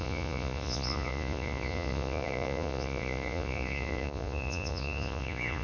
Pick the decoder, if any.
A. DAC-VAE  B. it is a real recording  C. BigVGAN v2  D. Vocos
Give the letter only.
D